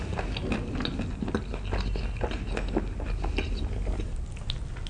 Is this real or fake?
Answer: real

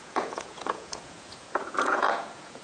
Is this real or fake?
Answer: fake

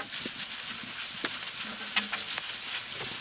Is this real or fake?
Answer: real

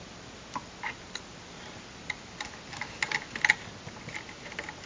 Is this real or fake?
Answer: real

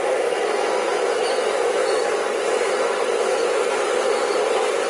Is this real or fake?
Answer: fake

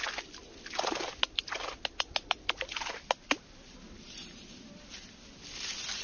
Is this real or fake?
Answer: real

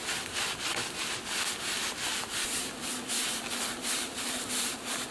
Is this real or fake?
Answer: real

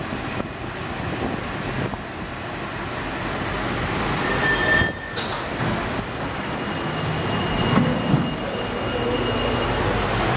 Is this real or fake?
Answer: real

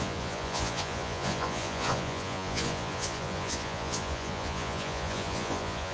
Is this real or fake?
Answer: fake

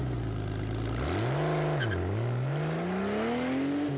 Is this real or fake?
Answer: real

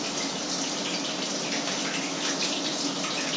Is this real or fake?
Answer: real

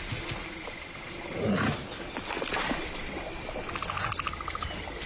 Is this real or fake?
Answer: real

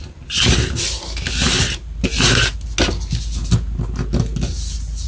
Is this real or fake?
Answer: real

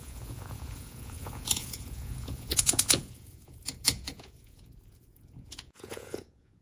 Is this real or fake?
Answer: fake